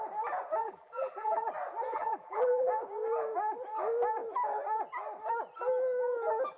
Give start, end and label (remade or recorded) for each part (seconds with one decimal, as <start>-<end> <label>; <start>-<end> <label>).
0.0-0.6 recorded; 0.6-1.5 remade; 1.5-1.9 recorded; 1.9-2.7 remade; 2.7-6.6 recorded